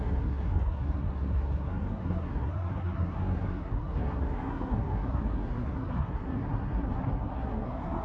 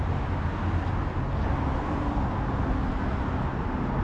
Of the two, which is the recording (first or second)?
second